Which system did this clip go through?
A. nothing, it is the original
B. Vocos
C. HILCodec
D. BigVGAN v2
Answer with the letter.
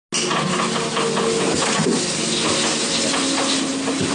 A